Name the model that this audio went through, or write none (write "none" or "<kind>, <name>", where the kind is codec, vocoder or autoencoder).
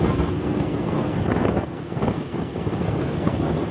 codec, SNAC